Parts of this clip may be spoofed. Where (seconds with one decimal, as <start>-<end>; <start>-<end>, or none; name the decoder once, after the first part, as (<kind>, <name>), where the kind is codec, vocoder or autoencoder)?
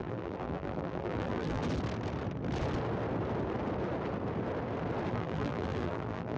0.0-1.6 (vocoder, BigVGAN v2); 5.1-6.4